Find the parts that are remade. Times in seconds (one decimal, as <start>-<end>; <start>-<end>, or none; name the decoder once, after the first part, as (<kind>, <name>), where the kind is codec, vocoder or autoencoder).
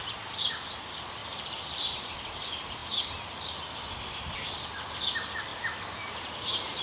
1.2-2.1 (vocoder, BigVGAN v2); 5.5-6.8